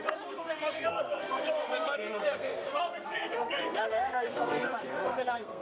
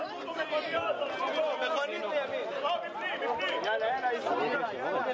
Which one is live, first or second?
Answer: second